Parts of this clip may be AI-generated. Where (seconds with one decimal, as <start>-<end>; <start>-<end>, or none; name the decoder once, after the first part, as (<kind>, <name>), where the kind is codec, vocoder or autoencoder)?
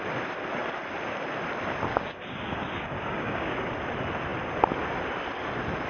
1.9-3.7 (codec, DAC)